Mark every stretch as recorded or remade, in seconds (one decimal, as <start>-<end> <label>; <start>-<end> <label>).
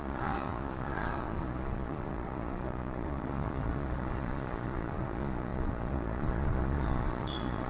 0.0-7.7 remade